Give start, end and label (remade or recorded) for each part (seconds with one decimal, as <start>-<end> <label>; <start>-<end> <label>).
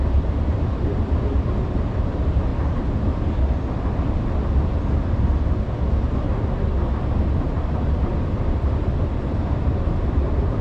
0.0-10.6 recorded